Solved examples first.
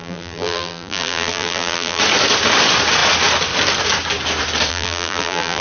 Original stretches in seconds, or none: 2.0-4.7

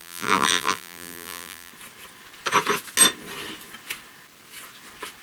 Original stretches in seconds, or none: 1.7-5.2

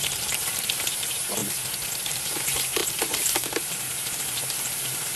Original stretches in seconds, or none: 1.4-2.0

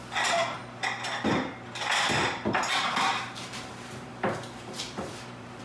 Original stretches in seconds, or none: 0.6-3.0

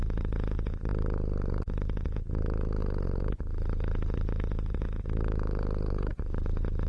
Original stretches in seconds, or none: 0.0-2.8; 5.0-6.9

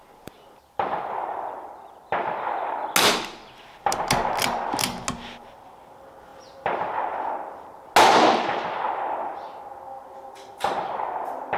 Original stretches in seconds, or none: 1.7-11.6

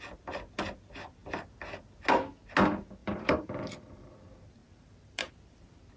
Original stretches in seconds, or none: 0.0-3.0; 4.1-4.6; 5.3-6.0

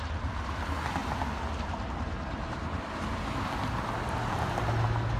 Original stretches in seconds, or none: 0.0-5.2